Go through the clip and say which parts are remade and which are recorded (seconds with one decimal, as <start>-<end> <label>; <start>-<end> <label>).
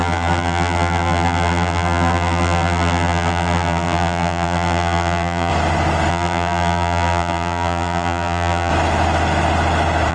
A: 0.0-5.5 remade; 5.5-6.1 recorded; 6.1-8.7 remade; 8.7-10.1 recorded